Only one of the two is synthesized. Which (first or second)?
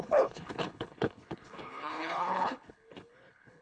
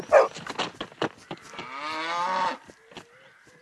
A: first